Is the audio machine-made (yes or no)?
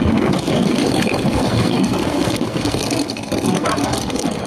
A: yes